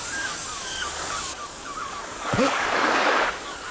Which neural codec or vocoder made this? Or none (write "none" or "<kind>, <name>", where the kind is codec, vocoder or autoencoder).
codec, DAC